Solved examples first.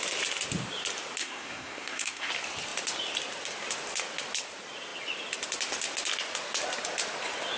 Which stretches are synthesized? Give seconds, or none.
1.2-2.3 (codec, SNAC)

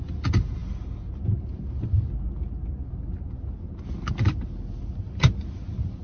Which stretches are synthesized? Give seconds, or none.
none

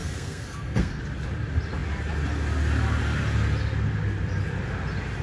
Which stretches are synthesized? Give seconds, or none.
0.0-1.0 (codec, SNAC)

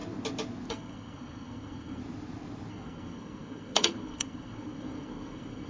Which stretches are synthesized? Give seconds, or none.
0.7-2.0 (codec, SNAC); 2.7-5.7

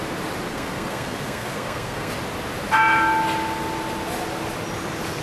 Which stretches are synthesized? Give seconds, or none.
0.5-2.1 (codec, SNAC)

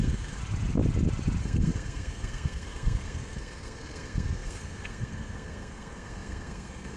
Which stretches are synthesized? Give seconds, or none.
0.0-0.4 (codec, SNAC); 1.4-7.0

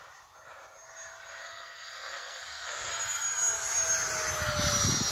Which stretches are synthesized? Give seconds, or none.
1.4-2.9 (codec, SNAC)

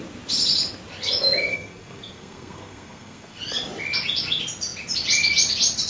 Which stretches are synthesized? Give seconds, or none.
1.5-3.4 (codec, SNAC)